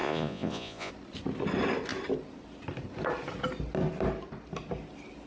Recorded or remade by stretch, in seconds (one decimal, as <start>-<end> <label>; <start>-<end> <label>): 0.0-0.9 remade; 0.9-5.3 recorded